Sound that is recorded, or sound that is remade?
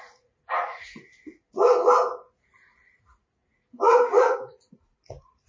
remade